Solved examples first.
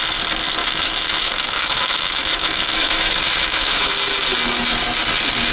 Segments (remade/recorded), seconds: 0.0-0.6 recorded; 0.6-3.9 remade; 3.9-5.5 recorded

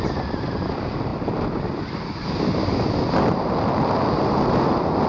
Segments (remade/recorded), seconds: 0.0-5.1 recorded

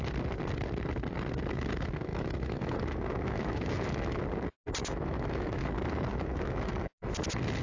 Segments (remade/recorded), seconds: 0.0-2.1 recorded; 2.1-4.2 remade; 4.2-4.8 recorded; 4.8-5.6 remade; 5.6-6.1 recorded; 6.1-7.1 remade; 7.1-7.6 recorded

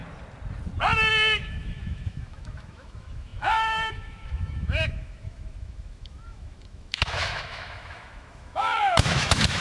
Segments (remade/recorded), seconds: 0.0-1.1 recorded; 1.1-9.6 remade

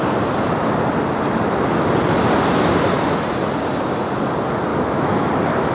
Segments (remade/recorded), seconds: 0.0-4.7 recorded; 4.7-5.3 remade; 5.3-5.7 recorded

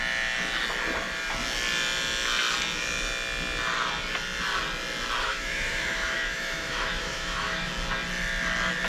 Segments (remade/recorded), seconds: 0.0-5.2 recorded; 5.2-7.7 remade; 7.7-8.9 recorded

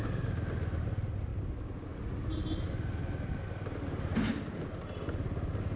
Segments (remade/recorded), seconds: 0.0-5.8 recorded